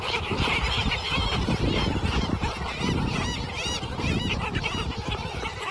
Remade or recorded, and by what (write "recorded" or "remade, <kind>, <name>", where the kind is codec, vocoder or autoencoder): recorded